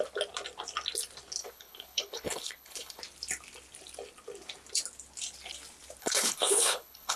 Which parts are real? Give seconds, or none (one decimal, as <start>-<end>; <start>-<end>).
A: 0.0-1.4; 3.0-6.0